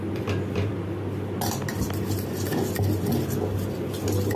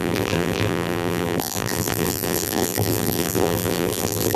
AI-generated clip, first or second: second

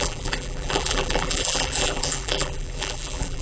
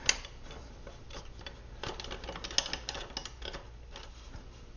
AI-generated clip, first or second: first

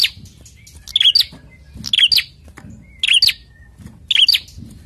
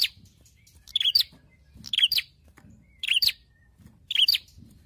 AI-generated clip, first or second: second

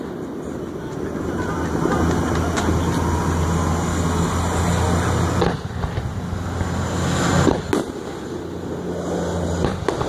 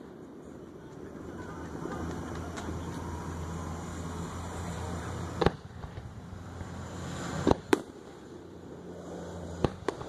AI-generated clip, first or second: second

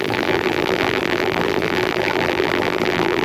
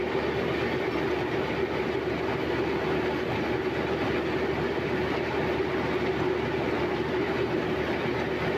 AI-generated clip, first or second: first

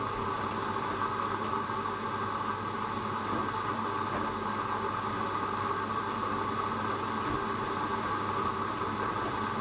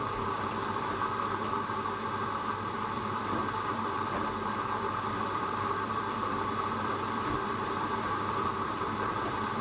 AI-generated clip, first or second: second